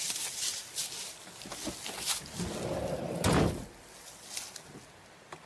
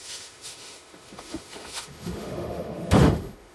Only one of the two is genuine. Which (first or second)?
first